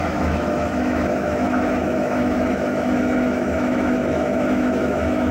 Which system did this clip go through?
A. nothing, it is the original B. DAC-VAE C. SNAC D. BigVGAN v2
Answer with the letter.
B